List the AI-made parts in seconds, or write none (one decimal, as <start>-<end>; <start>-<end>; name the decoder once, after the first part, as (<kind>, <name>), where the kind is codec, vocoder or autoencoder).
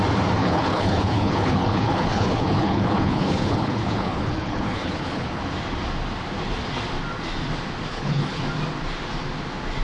0.4-5.4 (codec, HILCodec); 7.9-8.4